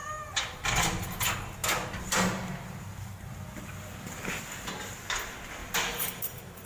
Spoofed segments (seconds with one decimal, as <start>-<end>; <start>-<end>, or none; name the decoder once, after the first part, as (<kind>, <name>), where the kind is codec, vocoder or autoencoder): 0.0-0.7 (vocoder, BigVGAN v2); 5.6-6.7